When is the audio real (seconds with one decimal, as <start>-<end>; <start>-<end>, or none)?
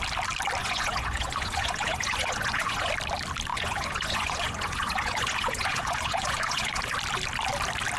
0.0-0.6; 2.9-3.5; 6.8-8.0